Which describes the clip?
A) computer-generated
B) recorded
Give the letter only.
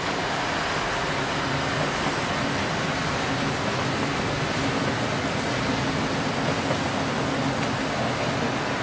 B